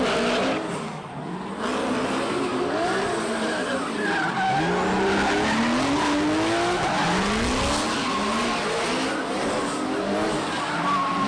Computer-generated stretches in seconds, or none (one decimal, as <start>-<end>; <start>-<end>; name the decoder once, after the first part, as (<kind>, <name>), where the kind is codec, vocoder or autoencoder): none